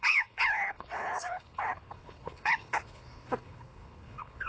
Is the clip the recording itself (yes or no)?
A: no